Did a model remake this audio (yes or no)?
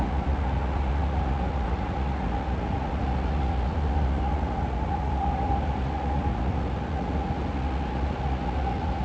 yes